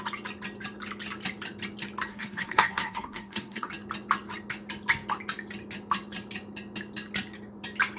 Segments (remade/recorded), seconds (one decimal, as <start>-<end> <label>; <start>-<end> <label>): 0.0-2.1 recorded; 2.1-3.7 remade; 3.7-8.0 recorded